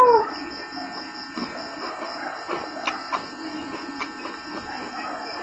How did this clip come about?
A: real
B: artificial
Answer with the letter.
A